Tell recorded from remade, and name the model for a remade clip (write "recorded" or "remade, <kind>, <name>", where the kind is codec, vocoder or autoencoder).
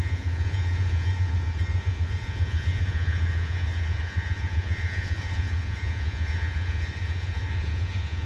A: remade, vocoder, Vocos